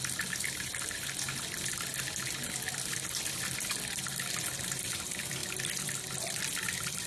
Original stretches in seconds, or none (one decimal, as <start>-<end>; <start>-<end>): 0.7-4.6